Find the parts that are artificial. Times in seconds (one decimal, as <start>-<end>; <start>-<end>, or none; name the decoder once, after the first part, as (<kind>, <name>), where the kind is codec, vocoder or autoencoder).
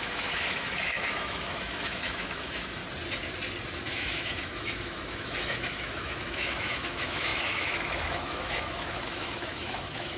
0.0-2.8 (autoencoder, DAC-VAE); 3.9-10.2